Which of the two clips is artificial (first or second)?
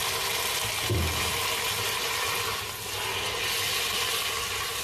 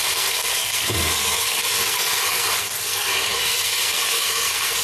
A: second